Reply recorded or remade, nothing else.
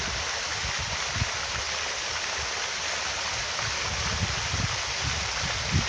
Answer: recorded